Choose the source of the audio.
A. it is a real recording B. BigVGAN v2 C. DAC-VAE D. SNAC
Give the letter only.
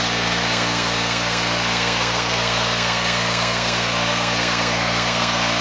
D